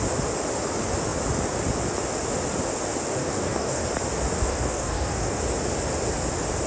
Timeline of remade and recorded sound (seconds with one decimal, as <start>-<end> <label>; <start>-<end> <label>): 0.0-3.2 recorded; 3.2-3.8 remade; 3.8-4.5 recorded; 4.5-5.4 remade; 5.4-6.7 recorded